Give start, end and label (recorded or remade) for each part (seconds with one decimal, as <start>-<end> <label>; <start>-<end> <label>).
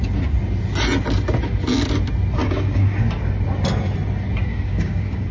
0.0-2.4 recorded; 2.4-3.0 remade; 3.0-4.5 recorded; 4.5-5.3 remade